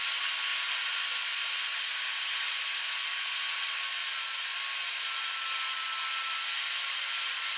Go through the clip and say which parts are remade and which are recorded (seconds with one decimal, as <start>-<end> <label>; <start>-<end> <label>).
0.0-7.6 recorded